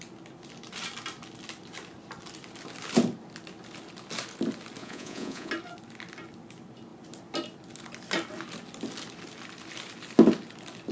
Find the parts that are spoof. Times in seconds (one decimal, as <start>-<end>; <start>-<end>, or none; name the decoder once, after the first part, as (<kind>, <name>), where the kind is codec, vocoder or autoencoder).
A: 4.8-5.5 (vocoder, Vocos)